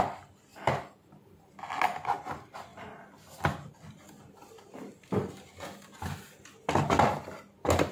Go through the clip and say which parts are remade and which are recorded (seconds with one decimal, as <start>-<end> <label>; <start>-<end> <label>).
0.0-0.5 recorded; 0.5-1.1 remade; 1.1-2.7 recorded; 2.7-3.7 remade; 3.7-7.9 recorded